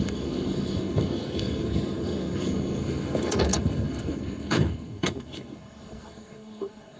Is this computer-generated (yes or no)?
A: yes